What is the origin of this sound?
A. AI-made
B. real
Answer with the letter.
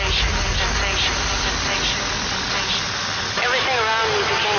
B